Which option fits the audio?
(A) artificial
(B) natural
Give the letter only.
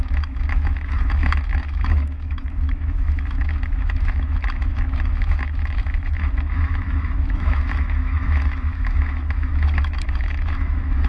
A